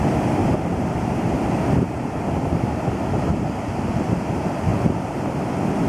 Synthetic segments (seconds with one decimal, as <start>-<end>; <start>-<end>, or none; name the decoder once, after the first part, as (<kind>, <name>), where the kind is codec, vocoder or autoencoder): 0.4-3.9 (vocoder, BigVGAN v2); 4.7-5.5